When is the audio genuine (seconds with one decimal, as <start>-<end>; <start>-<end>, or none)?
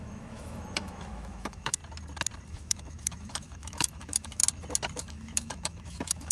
1.8-2.5; 4.4-5.0